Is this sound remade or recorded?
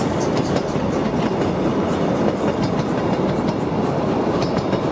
remade